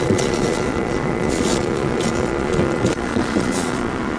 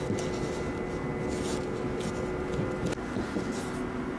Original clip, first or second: second